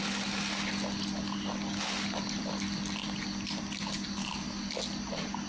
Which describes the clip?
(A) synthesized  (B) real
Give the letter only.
B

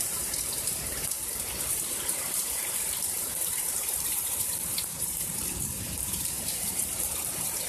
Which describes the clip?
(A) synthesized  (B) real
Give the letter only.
A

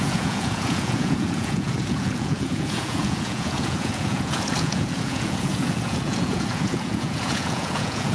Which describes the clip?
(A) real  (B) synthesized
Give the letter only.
B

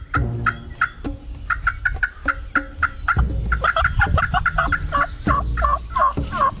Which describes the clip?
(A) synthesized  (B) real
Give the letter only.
B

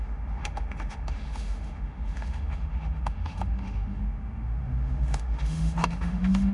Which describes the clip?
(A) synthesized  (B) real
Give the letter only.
A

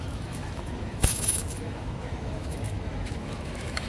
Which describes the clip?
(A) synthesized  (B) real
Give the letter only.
A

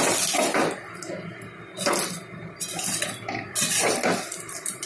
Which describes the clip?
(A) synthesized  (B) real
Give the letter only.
B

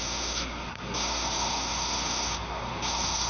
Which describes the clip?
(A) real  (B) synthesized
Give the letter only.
B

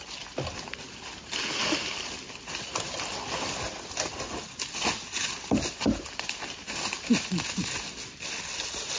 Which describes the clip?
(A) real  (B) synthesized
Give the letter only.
A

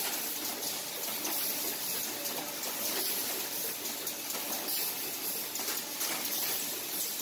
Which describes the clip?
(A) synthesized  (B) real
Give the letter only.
B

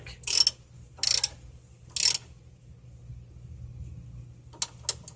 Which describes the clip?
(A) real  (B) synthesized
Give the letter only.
A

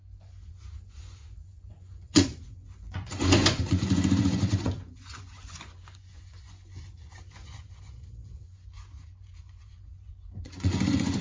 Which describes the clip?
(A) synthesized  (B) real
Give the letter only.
A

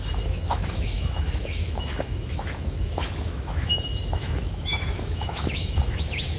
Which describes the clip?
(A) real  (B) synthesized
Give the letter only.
B